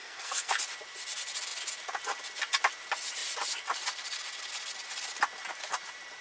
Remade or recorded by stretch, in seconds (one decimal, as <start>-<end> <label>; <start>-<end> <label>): 0.0-0.5 remade; 0.5-6.2 recorded